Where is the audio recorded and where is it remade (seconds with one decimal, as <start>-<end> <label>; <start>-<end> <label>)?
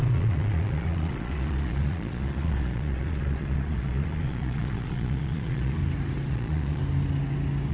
0.0-5.8 remade; 5.8-6.3 recorded; 6.3-6.8 remade; 6.8-7.7 recorded